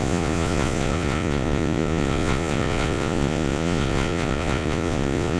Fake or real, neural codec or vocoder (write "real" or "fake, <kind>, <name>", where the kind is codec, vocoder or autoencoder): fake, vocoder, Vocos